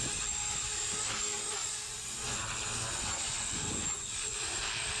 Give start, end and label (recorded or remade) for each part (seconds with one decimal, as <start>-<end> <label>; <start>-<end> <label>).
0.0-1.6 recorded; 1.6-4.6 remade; 4.6-5.0 recorded